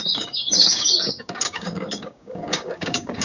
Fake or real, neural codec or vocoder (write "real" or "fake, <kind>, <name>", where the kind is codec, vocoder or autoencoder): fake, codec, DAC